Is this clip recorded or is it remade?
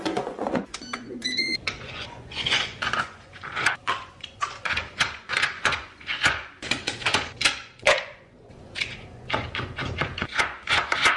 remade